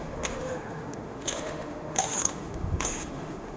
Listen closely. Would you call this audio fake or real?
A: fake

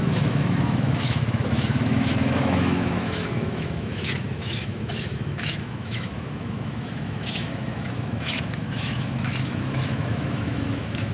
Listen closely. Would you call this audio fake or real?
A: fake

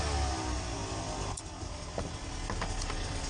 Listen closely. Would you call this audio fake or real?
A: real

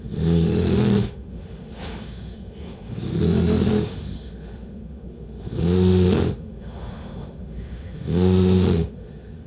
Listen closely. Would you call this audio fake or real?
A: fake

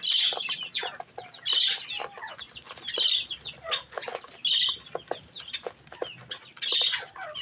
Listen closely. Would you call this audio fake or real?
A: real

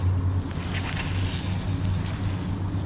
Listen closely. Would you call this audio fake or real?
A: real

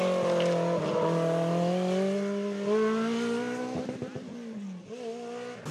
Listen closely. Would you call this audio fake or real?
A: real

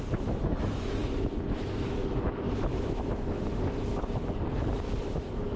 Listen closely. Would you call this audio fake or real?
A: fake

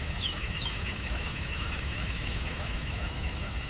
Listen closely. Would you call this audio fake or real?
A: fake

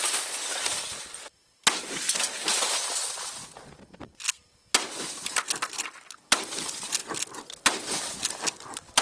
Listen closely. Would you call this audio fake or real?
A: real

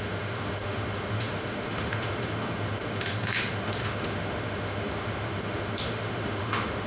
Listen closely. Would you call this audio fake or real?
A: fake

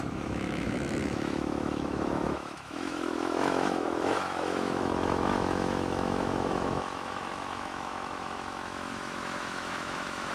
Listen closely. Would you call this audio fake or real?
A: fake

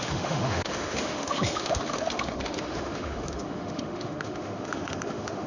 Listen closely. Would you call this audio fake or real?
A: fake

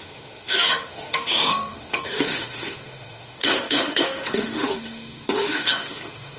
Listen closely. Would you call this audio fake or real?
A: fake